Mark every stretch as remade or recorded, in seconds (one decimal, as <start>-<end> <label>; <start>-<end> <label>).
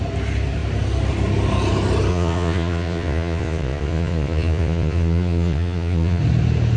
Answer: 0.0-2.1 recorded; 2.1-6.2 remade; 6.2-6.8 recorded